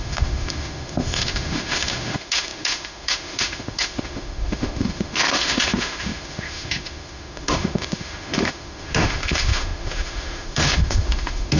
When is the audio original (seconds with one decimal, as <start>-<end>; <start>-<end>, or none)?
none